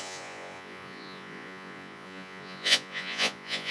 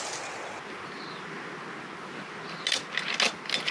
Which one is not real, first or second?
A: first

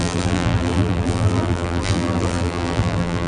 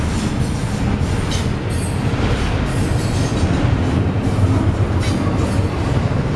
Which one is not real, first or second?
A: first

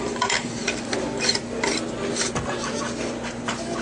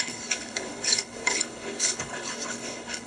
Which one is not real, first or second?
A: second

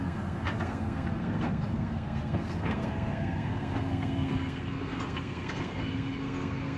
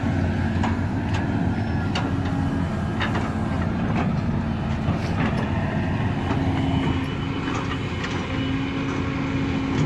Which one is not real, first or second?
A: first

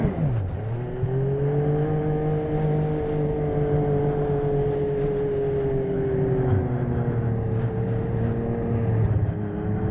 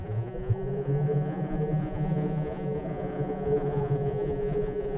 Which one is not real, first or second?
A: second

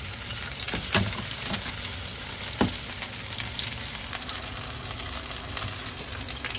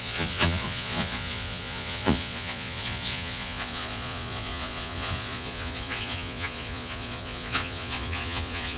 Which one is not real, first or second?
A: second